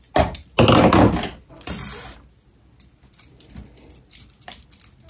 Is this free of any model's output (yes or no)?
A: yes